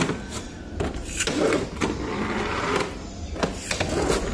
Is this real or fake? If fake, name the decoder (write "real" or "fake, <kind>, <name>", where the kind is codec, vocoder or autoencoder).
real